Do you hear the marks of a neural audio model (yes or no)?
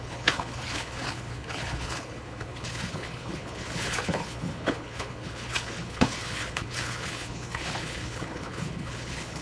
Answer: yes